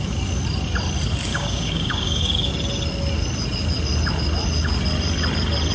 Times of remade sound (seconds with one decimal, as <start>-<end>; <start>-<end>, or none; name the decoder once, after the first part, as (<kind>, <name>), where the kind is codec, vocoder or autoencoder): 1.3-2.5 (codec, DAC)